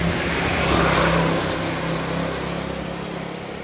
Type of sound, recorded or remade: recorded